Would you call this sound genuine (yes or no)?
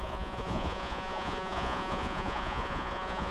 no